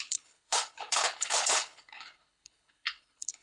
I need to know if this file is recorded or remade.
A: remade